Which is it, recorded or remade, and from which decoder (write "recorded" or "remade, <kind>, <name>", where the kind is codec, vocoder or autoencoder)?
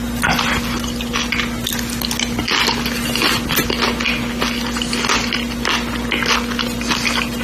recorded